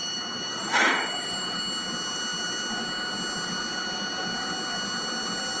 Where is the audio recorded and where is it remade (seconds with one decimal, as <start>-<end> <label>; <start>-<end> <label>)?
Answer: 0.0-1.6 remade; 1.6-5.6 recorded